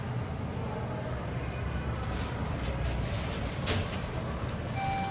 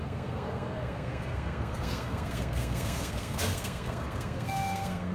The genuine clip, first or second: first